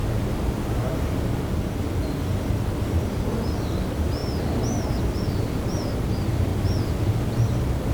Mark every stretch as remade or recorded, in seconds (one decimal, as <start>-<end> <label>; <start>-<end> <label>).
0.0-7.9 recorded